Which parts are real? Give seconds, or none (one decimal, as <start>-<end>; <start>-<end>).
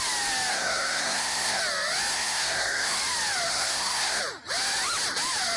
0.0-0.5; 1.6-2.1; 3.0-3.5; 4.2-5.6